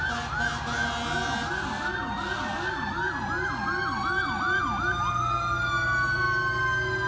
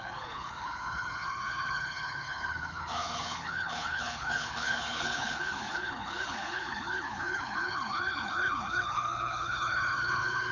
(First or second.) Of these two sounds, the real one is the first